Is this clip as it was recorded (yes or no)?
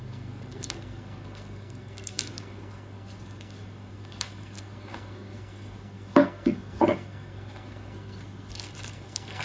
no